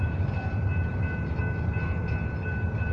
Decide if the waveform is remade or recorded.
recorded